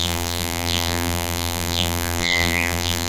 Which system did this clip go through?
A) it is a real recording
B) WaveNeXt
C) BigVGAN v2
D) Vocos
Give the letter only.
C